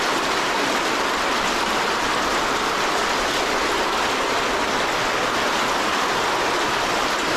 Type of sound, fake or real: real